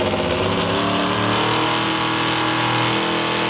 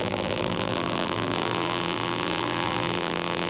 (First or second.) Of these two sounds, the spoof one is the second